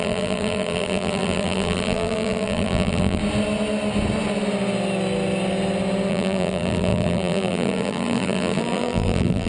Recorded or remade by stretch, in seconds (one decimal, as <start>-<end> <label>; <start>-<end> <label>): 0.0-3.2 remade; 3.2-6.1 recorded; 6.1-9.5 remade